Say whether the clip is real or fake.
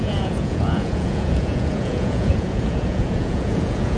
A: fake